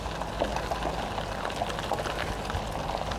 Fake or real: real